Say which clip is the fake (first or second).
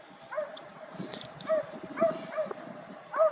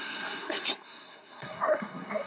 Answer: second